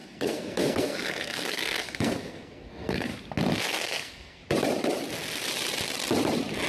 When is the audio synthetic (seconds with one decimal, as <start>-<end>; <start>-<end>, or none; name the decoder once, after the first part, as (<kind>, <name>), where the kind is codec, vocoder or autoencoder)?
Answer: 0.0-3.1 (codec, SNAC); 3.6-4.4